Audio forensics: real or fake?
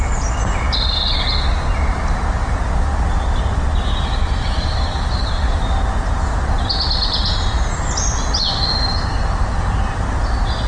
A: real